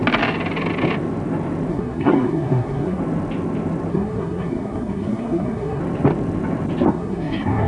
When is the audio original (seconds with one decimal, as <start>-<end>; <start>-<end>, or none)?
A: 0.0-1.7; 3.0-3.9; 5.8-6.9

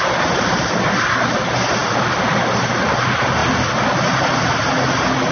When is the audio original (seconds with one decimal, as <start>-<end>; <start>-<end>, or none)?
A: 0.0-5.3

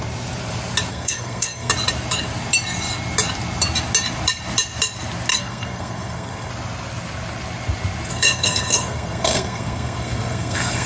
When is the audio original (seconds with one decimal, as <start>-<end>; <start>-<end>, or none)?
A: 0.0-0.9; 1.7-5.3; 6.5-8.1